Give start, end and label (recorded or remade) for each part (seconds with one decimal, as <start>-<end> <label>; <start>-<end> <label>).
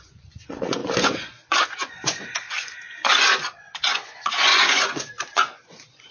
0.0-6.1 remade